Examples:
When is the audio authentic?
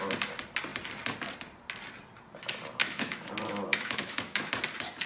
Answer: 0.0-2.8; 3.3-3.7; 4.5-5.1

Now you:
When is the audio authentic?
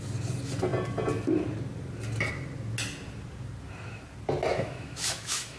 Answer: 0.0-4.5